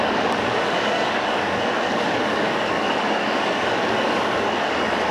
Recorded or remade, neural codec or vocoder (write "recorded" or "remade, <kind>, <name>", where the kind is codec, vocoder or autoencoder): remade, codec, DAC